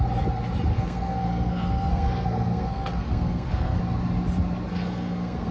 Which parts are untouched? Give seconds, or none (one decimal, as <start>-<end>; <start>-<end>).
0.0-0.7; 3.8-4.7